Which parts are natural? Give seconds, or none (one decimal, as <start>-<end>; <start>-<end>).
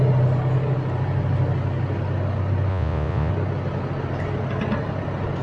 0.0-2.7; 3.3-5.4